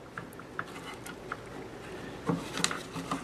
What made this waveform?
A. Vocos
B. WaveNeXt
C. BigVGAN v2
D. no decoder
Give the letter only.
D